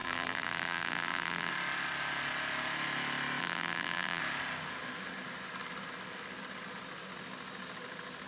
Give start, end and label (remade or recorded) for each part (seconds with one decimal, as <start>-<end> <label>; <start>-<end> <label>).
0.0-1.5 remade; 1.5-3.4 recorded; 3.4-4.2 remade; 4.2-8.3 recorded